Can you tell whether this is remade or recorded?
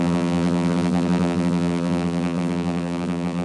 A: remade